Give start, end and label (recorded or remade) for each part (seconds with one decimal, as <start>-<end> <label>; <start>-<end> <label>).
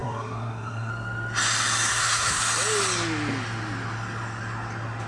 0.0-0.9 remade; 0.9-1.9 recorded; 1.9-2.4 remade; 2.4-5.1 recorded